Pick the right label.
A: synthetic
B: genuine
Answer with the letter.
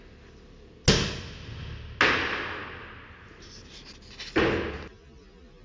B